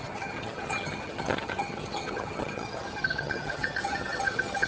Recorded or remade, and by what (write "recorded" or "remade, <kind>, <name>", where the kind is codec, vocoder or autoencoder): remade, vocoder, HiFi-GAN